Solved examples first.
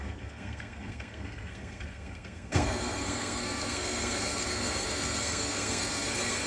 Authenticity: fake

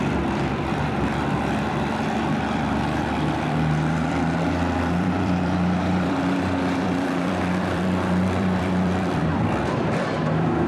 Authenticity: fake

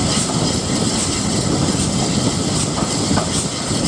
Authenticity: real